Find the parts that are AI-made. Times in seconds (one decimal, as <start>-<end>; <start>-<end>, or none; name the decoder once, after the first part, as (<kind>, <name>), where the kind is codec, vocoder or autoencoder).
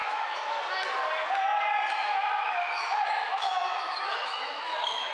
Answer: 0.0-0.5 (autoencoder, DAC-VAE); 2.0-5.1